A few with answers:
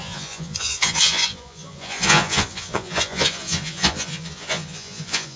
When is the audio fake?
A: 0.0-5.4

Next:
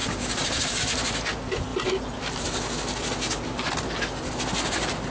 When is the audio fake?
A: 0.0-0.8

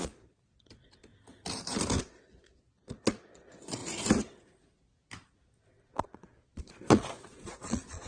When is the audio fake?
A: 0.0-1.1; 2.0-3.8; 5.8-8.1